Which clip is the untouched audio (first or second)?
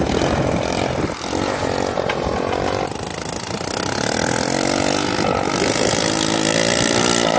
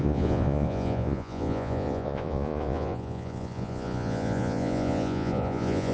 first